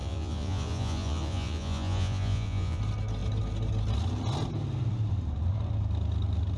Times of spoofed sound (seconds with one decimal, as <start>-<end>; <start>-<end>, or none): 0.0-2.8